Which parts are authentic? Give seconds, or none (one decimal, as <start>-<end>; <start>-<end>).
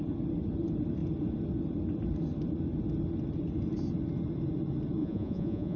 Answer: 0.0-5.0